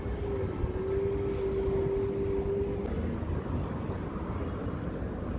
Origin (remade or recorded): recorded